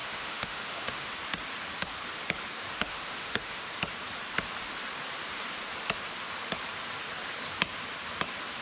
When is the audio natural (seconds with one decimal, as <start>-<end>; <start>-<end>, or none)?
1.1-2.7; 3.6-8.6